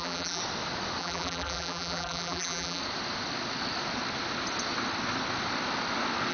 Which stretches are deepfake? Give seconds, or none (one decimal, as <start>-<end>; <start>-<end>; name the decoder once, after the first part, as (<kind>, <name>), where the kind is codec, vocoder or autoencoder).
0.0-0.4 (vocoder, BigVGAN v2); 1.0-2.8